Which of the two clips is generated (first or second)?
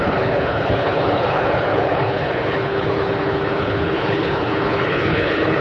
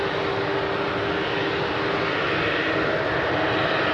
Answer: first